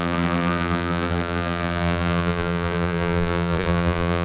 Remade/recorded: remade